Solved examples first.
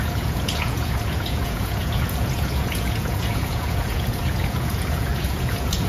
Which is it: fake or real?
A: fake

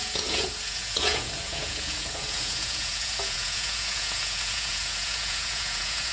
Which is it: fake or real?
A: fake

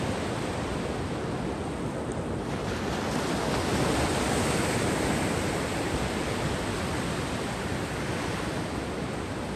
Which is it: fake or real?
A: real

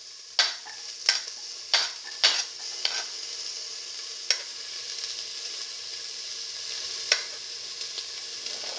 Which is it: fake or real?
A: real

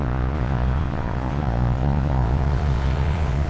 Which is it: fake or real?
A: fake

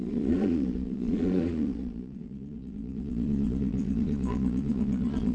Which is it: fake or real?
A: fake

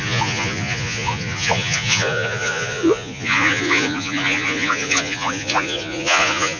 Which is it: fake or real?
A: fake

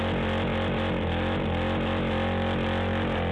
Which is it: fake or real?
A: real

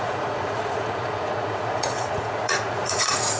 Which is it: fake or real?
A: fake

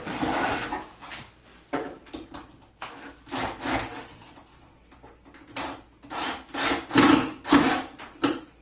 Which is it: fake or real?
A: real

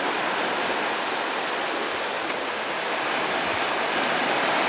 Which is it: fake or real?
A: real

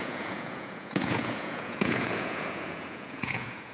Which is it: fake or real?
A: fake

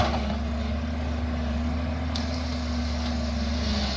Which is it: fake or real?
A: real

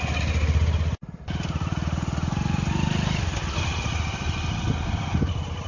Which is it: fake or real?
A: real